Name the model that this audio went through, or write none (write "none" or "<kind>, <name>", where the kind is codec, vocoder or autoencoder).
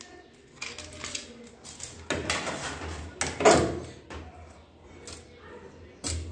none